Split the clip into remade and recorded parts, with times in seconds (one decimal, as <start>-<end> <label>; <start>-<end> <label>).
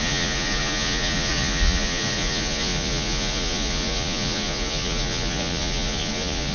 0.0-6.5 remade